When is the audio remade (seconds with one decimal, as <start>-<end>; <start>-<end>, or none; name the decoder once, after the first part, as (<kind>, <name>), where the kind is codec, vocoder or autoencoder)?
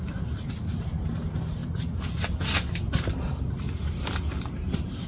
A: 0.0-1.6 (vocoder, BigVGAN v2); 2.7-5.1